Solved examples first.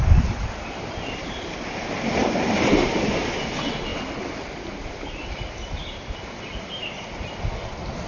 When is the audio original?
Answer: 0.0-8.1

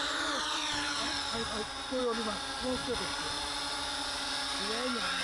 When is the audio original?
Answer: 0.0-5.2

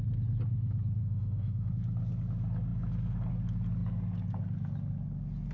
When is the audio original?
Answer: 0.0-1.0; 1.7-5.5

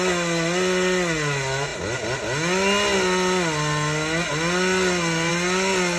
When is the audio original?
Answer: 0.0-6.0

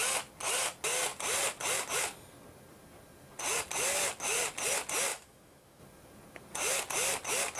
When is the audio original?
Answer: 0.0-5.1; 5.8-7.6

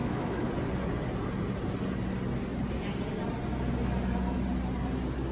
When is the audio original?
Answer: 0.5-5.3

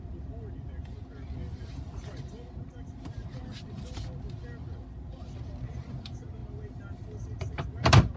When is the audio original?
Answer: 0.0-8.2